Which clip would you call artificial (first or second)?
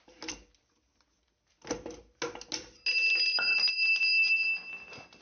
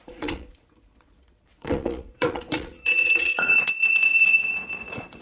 second